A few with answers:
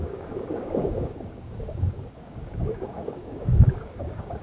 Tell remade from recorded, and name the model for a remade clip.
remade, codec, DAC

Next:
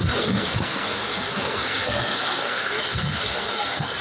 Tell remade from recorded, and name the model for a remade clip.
remade, codec, SNAC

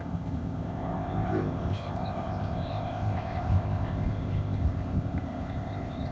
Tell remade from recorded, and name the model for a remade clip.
remade, codec, ZipCodec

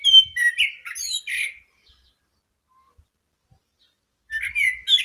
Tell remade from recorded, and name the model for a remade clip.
recorded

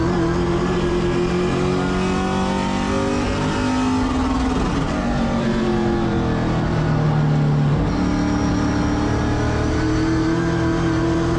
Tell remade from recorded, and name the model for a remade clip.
recorded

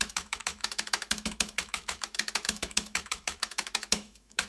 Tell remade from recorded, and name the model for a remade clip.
remade, autoencoder, DAC-VAE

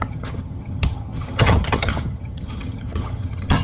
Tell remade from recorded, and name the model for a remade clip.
remade, vocoder, HiFi-GAN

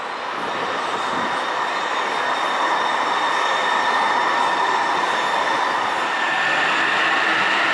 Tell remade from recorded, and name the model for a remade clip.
recorded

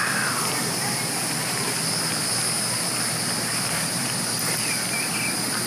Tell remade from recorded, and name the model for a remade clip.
recorded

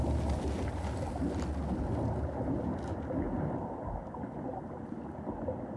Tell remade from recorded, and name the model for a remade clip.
recorded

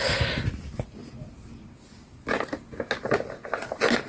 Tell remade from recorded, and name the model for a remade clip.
recorded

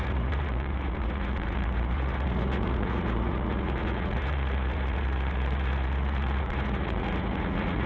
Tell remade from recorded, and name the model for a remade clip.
remade, vocoder, Vocos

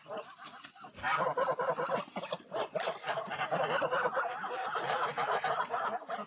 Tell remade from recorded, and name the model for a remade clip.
recorded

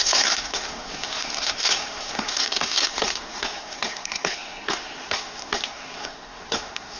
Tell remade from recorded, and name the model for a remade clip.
remade, codec, SNAC